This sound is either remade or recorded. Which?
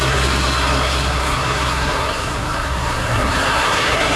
remade